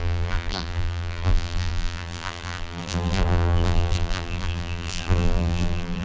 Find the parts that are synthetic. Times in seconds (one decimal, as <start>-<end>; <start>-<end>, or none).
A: 0.0-6.0